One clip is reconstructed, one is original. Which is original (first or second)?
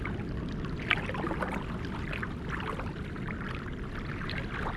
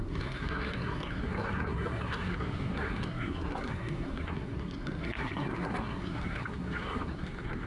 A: first